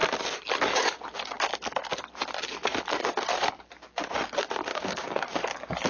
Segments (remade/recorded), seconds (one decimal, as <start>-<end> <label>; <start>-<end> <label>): 0.0-4.7 recorded; 4.7-5.3 remade; 5.3-5.9 recorded